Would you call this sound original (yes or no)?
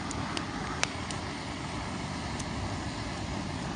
yes